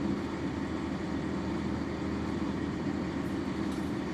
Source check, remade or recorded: remade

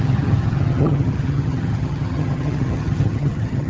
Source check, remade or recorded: remade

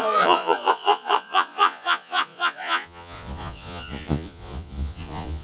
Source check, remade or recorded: remade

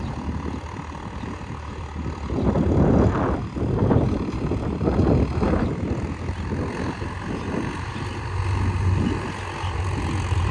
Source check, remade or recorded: recorded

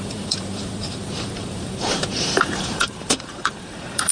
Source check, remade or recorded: remade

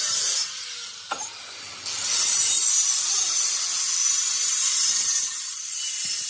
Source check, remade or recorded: recorded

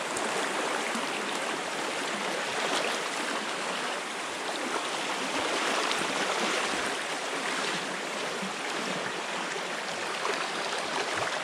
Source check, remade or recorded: remade